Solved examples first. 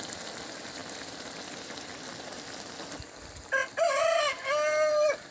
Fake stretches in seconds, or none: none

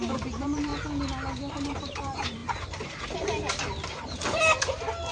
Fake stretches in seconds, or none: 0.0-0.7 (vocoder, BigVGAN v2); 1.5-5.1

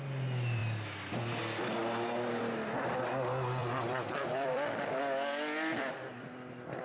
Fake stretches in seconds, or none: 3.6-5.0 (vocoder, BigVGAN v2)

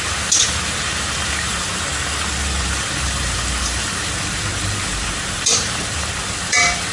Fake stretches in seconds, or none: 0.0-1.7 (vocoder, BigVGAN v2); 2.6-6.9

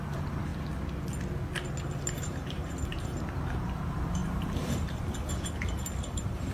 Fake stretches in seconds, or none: 0.0-0.5 (vocoder, BigVGAN v2); 2.0-6.5

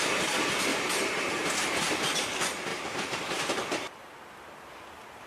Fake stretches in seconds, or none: 0.7-1.8 (vocoder, BigVGAN v2); 2.7-3.6

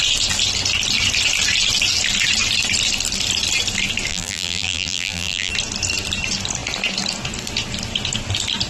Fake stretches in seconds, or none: 4.1-5.5 (vocoder, BigVGAN v2)

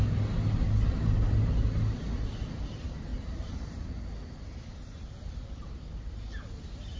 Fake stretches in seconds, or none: 3.1-4.0 (vocoder, BigVGAN v2)